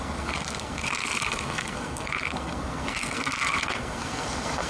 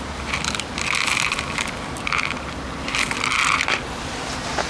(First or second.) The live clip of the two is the second